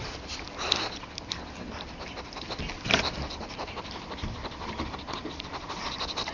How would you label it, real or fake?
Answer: fake